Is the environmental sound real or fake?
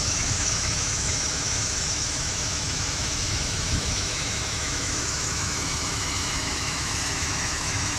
fake